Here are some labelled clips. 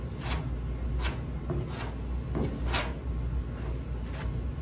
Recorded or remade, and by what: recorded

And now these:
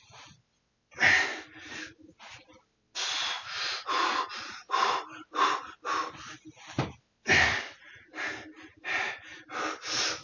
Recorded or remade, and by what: recorded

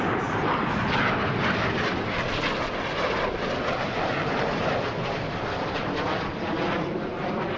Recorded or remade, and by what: recorded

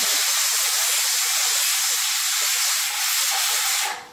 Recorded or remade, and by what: recorded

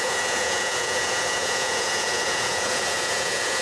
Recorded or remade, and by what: remade, vocoder, Vocos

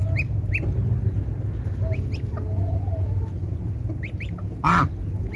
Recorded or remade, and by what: recorded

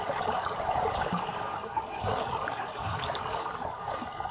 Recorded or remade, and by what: remade, codec, DAC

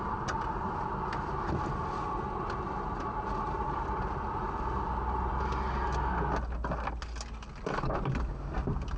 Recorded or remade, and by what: recorded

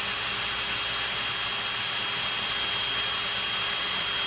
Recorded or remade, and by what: recorded